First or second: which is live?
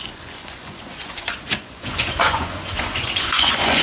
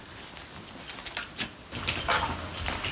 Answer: second